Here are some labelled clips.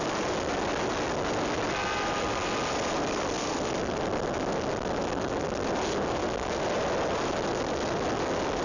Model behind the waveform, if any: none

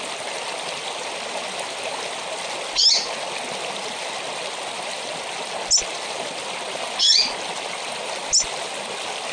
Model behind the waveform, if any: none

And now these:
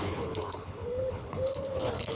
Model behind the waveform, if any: codec, HILCodec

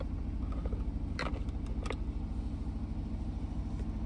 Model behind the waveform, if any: none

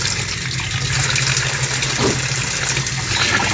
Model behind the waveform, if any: none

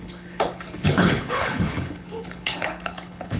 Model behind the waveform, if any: codec, HILCodec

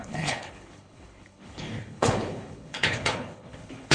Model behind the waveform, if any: codec, HILCodec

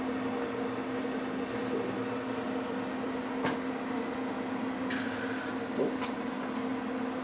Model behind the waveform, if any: none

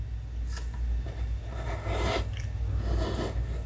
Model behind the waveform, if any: none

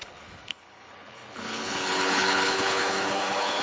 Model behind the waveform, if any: codec, HILCodec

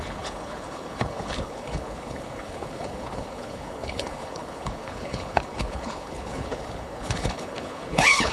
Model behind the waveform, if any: codec, HILCodec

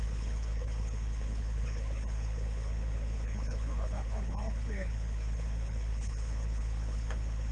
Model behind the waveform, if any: codec, HILCodec